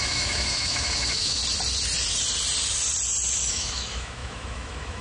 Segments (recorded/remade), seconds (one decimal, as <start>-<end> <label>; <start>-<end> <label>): 0.0-1.4 remade; 1.4-3.5 recorded; 3.5-5.0 remade